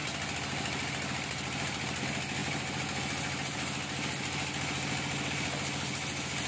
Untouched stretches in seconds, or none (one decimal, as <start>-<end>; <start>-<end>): 0.0-6.5